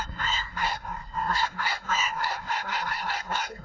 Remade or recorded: remade